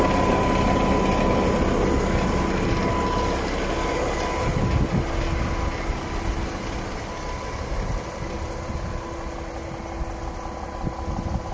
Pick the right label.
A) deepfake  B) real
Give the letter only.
B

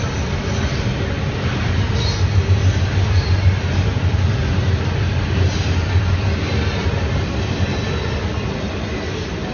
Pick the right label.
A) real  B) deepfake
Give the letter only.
A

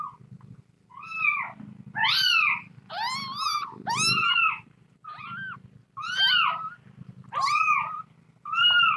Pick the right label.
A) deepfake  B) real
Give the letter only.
B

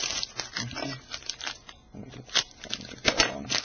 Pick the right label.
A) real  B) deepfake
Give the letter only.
A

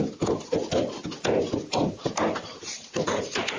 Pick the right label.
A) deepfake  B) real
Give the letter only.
B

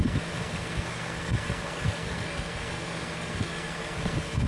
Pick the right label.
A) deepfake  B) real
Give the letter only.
A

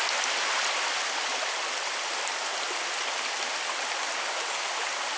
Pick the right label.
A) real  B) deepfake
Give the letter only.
A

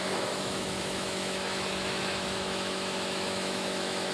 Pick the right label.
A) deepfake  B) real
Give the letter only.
A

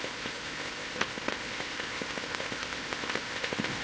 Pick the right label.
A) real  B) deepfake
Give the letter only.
B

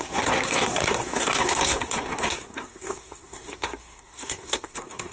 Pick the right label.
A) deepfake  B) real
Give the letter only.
A